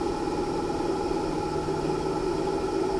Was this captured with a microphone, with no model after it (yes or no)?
yes